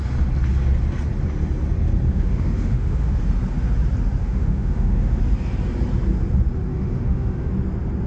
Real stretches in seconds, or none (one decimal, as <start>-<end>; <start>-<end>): 0.0-2.1; 3.2-4.2; 5.2-6.7; 7.5-8.1